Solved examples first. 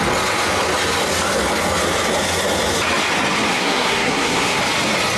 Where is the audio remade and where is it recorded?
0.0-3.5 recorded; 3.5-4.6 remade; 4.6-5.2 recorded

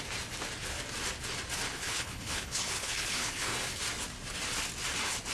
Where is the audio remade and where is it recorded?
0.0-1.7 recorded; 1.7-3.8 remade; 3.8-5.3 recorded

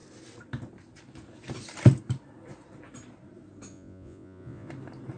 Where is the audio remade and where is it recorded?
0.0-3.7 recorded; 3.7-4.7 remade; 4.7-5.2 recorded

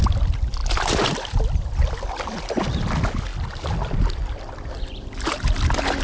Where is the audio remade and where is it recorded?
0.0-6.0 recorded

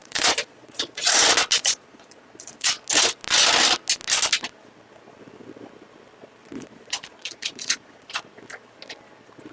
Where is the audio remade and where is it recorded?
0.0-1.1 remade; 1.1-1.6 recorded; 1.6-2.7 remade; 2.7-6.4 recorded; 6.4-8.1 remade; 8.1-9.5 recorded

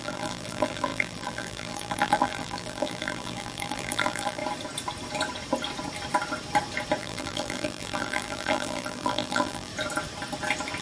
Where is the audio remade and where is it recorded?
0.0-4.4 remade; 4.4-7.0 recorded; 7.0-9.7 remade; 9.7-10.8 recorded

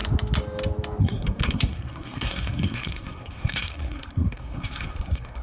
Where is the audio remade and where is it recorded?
0.0-1.0 recorded; 1.0-5.4 remade

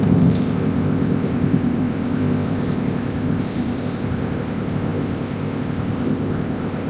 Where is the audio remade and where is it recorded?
0.0-6.9 remade